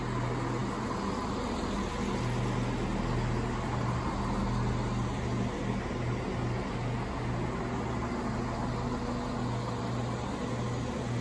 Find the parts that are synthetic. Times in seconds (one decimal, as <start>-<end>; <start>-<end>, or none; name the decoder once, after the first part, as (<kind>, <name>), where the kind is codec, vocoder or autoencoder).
none